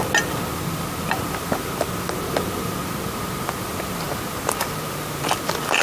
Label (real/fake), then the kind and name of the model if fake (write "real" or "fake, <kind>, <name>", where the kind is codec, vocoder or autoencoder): real